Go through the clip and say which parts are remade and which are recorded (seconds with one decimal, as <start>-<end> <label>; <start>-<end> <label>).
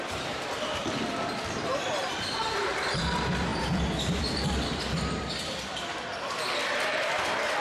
0.0-7.6 remade